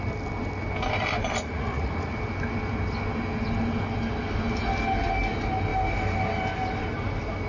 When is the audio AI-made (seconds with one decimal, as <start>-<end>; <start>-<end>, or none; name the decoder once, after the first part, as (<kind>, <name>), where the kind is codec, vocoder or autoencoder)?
1.4-2.1 (vocoder, Vocos)